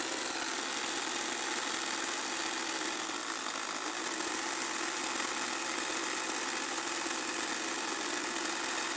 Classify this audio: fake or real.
real